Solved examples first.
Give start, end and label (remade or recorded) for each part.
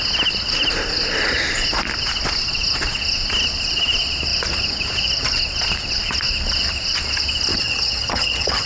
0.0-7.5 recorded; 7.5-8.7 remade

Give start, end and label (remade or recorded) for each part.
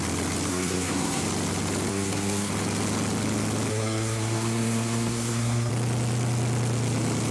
0.0-0.5 recorded; 0.5-1.2 remade; 1.2-1.9 recorded; 1.9-2.5 remade; 2.5-3.7 recorded; 3.7-5.7 remade; 5.7-7.3 recorded